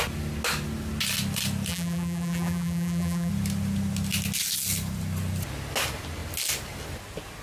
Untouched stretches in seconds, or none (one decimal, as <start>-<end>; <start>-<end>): 0.0-1.7; 3.3-7.4